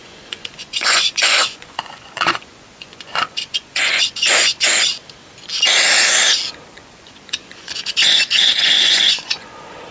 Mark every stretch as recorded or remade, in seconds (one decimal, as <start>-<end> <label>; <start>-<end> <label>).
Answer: 0.0-5.0 remade; 5.0-6.7 recorded; 6.7-9.9 remade